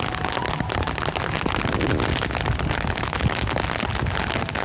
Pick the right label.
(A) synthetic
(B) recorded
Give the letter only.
B